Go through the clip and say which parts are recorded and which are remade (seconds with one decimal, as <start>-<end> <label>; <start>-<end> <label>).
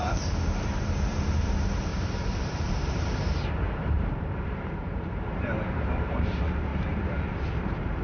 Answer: 0.0-6.7 remade; 6.7-7.4 recorded; 7.4-8.0 remade